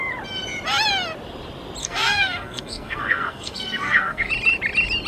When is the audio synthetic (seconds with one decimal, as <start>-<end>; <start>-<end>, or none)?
1.8-4.3